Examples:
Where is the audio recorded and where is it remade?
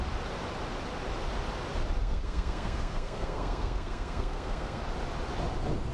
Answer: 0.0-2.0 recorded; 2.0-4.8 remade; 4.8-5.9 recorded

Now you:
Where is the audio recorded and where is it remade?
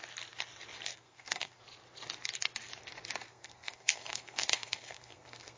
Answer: 0.0-0.9 recorded; 0.9-1.6 remade; 1.6-3.3 recorded; 3.3-5.6 remade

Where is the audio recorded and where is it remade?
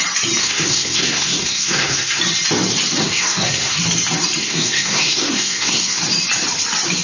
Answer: 0.0-0.4 recorded; 0.4-2.2 remade; 2.2-3.0 recorded; 3.0-3.8 remade; 3.8-4.4 recorded; 4.4-6.0 remade; 6.0-7.0 recorded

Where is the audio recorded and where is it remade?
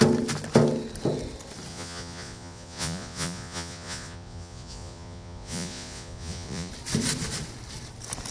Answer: 0.0-1.7 recorded; 1.7-6.7 remade; 6.7-8.3 recorded